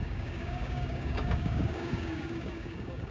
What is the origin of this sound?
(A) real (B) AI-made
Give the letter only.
B